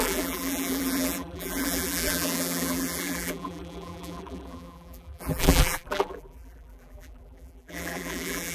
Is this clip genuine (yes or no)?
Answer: no